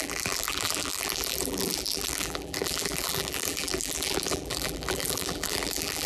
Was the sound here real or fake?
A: fake